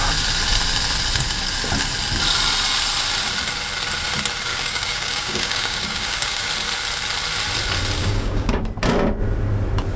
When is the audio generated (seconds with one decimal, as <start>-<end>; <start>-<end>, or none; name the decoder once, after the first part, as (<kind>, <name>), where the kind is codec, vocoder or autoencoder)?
4.5-6.5 (codec, DAC); 8.0-8.6